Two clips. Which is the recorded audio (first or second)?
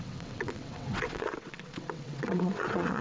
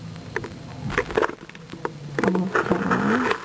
second